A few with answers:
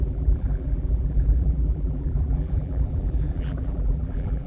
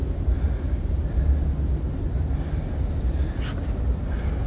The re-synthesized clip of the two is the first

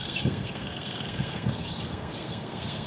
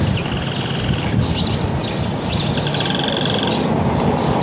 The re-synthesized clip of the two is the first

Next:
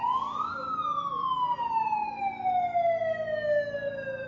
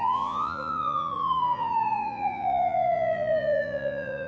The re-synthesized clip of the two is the second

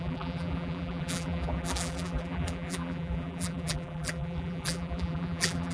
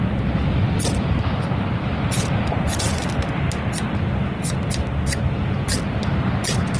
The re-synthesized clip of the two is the first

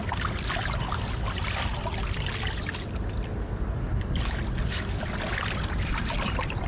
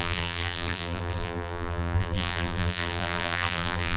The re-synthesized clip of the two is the second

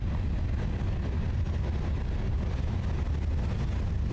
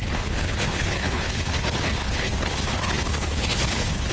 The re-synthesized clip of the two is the second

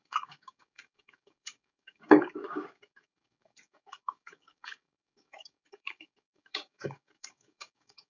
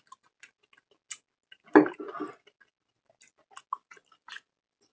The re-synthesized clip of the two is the first